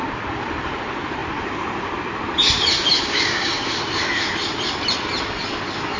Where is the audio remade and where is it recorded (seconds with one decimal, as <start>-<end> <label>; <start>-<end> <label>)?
0.0-2.9 recorded; 2.9-3.7 remade; 3.7-6.0 recorded